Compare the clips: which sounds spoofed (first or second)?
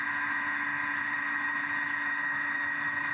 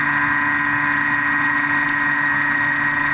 first